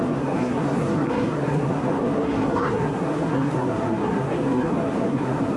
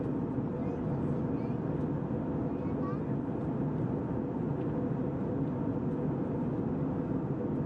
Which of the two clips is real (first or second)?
second